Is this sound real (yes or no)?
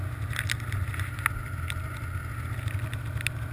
yes